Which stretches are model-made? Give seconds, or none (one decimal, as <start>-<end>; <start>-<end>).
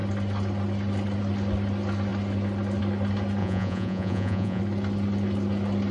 3.4-4.6